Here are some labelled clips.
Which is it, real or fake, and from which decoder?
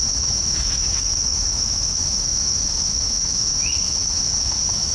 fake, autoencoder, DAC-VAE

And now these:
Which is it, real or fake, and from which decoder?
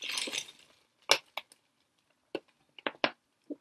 real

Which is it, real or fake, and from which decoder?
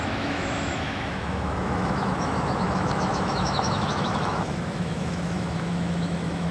fake, autoencoder, DAC-VAE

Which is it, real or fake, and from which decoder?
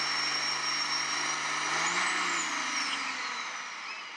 real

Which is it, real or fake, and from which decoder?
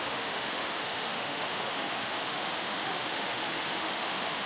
fake, autoencoder, DAC-VAE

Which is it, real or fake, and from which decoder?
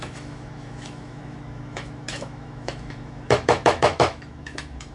fake, autoencoder, DAC-VAE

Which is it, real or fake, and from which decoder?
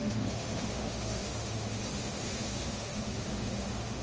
fake, autoencoder, DAC-VAE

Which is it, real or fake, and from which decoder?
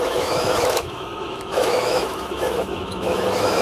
fake, autoencoder, DAC-VAE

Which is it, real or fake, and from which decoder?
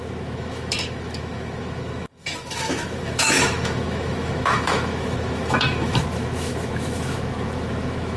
fake, autoencoder, DAC-VAE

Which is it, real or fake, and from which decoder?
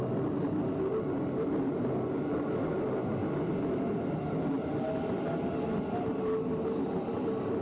real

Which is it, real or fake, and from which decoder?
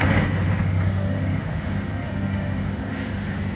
fake, autoencoder, DAC-VAE